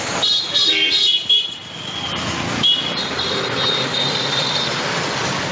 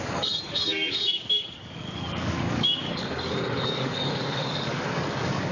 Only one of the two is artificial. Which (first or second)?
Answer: second